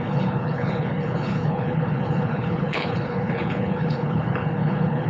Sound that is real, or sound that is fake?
fake